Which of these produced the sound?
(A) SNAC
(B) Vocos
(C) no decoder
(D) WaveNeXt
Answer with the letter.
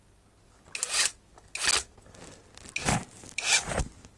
C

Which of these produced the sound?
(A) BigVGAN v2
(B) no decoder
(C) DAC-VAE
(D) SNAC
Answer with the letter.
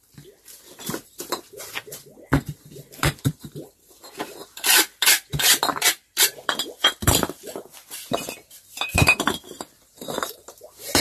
A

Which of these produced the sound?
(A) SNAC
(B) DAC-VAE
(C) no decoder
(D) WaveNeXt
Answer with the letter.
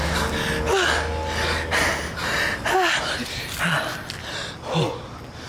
C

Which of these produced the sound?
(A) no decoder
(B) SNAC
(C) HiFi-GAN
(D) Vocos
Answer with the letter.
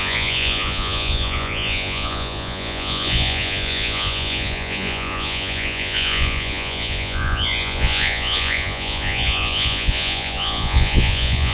D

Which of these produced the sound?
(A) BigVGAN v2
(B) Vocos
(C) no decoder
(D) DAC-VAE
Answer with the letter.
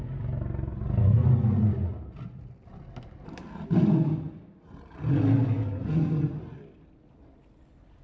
C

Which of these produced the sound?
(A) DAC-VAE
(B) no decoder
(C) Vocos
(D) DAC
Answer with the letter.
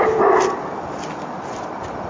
B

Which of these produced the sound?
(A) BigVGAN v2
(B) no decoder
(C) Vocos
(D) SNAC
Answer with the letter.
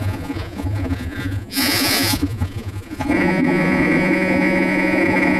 C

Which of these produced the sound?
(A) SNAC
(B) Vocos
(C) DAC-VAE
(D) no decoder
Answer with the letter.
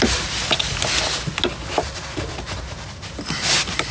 D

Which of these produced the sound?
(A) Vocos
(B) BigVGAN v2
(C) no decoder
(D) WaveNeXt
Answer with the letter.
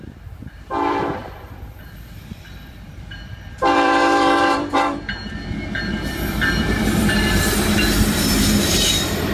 B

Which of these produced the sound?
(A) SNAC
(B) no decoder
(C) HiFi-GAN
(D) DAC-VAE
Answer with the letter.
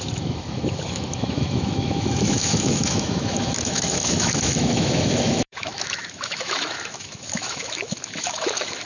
D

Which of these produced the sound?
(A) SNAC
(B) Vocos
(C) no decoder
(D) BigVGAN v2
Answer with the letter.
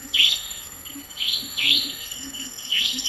A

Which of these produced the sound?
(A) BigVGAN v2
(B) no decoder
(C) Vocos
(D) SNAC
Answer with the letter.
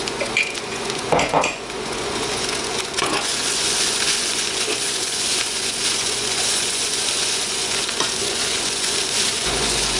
C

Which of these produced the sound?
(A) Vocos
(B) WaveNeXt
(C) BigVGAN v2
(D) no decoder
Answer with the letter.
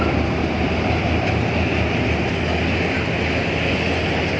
C